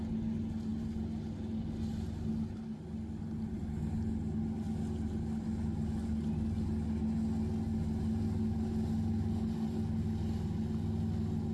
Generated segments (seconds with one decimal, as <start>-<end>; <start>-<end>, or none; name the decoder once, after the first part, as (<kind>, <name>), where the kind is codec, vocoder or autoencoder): none